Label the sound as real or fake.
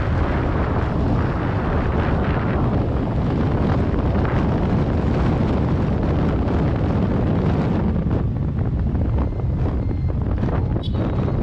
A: real